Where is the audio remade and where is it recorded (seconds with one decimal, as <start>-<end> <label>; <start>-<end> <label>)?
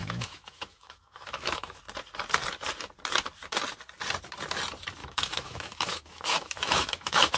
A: 0.0-1.8 remade; 1.8-5.0 recorded; 5.0-7.4 remade